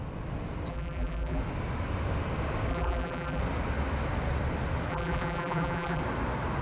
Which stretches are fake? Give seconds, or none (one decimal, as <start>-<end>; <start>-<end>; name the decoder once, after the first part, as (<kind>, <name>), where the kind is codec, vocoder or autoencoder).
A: 0.7-1.4 (vocoder, BigVGAN v2); 2.7-3.4; 4.9-6.0